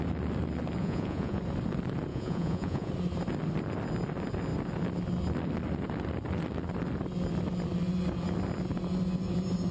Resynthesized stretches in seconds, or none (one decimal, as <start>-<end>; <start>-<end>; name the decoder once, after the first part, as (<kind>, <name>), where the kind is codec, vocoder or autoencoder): 0.8-1.4 (vocoder, Vocos); 2.1-2.9